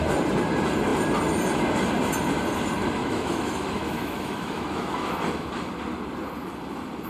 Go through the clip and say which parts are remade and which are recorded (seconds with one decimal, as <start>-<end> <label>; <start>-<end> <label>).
0.0-3.0 recorded; 3.0-5.5 remade; 5.5-7.1 recorded